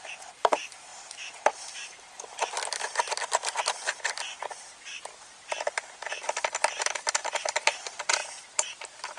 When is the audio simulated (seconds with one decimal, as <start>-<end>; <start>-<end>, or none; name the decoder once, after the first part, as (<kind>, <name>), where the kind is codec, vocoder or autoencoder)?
none

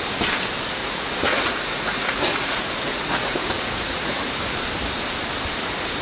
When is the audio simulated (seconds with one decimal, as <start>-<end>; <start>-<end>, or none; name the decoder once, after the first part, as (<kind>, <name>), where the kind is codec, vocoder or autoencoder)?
0.8-4.3 (vocoder, Vocos)

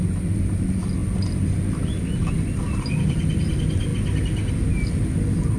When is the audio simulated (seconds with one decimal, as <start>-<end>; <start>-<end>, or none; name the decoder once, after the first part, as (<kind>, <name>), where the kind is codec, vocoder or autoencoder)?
none

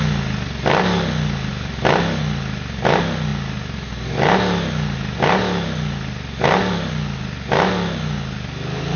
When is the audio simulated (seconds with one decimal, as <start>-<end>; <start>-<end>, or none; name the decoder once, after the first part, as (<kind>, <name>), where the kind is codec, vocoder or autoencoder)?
none

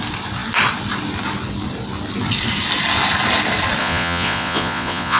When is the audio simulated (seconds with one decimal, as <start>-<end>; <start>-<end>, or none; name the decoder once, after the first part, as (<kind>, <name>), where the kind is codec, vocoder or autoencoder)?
3.8-5.2 (vocoder, Vocos)

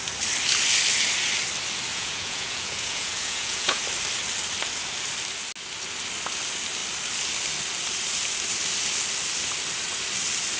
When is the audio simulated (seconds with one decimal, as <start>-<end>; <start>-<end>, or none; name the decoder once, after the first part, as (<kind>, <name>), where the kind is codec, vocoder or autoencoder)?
1.9-3.8 (vocoder, Vocos)

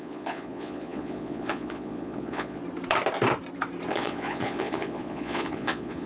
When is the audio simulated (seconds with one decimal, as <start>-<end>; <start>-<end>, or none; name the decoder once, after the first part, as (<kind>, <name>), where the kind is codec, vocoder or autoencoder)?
0.0-2.6 (vocoder, Vocos); 3.9-6.1